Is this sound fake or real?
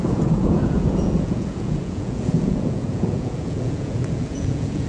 fake